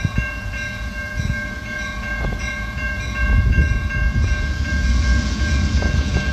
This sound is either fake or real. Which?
fake